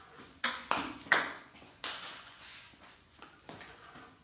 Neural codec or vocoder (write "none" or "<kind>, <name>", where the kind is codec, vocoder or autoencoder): vocoder, Vocos